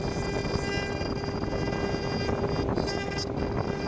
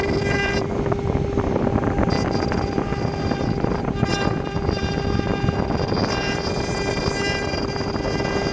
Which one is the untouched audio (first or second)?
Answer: first